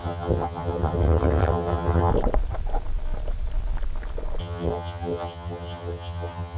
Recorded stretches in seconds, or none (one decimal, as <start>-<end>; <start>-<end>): 2.1-4.4